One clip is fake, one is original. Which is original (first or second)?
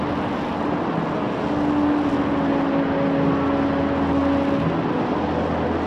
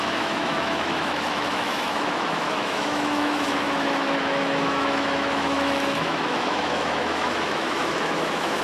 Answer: first